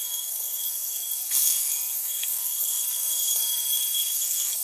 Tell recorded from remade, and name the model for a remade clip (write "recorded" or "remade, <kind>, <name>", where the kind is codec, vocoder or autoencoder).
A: remade, codec, SNAC